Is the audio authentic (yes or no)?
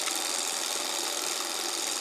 yes